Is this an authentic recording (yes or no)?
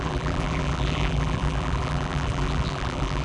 no